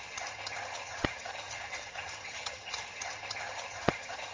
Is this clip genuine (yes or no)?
no